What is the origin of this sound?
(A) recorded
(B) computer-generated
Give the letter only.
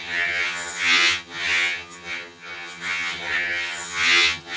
B